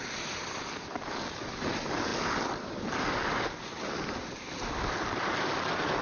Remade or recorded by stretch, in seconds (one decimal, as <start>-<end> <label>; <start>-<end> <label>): 0.0-6.0 recorded

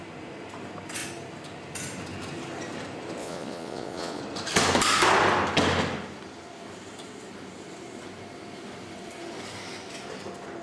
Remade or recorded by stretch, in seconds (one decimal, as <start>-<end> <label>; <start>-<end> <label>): 0.0-3.2 recorded; 3.2-4.2 remade; 4.2-10.6 recorded

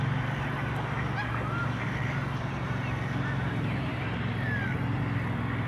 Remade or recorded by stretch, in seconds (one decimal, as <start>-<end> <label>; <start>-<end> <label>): 0.0-5.7 recorded

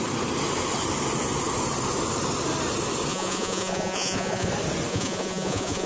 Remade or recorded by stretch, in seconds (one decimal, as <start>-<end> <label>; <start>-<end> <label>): 0.0-3.1 recorded; 3.1-4.5 remade; 4.5-4.9 recorded; 4.9-5.9 remade

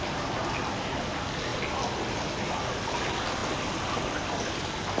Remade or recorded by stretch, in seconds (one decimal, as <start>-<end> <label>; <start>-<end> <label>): 0.0-5.0 recorded

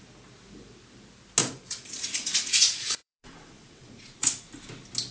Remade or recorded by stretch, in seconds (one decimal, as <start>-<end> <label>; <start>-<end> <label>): 0.0-1.4 recorded; 1.4-4.5 remade; 4.5-5.1 recorded

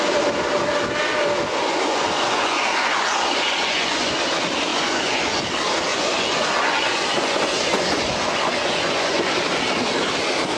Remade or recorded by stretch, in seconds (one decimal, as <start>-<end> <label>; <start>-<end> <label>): 0.0-1.5 recorded; 1.5-4.1 remade; 4.1-4.7 recorded; 4.7-5.4 remade; 5.4-5.9 recorded; 5.9-9.3 remade; 9.3-10.6 recorded